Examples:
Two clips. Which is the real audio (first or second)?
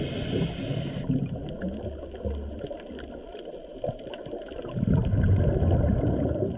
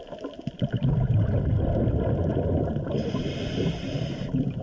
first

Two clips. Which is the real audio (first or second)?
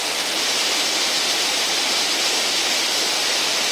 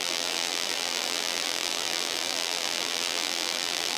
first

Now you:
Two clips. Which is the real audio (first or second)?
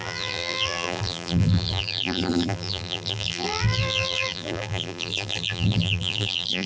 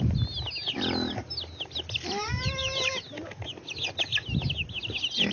second